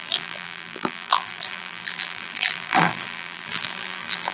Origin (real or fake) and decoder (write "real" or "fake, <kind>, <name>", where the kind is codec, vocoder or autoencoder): fake, vocoder, BigVGAN v2